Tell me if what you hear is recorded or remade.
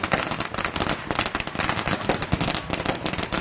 recorded